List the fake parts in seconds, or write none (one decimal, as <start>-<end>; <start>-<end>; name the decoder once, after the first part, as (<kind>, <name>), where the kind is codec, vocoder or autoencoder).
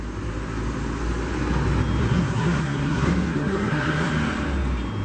2.0-4.1 (codec, SNAC)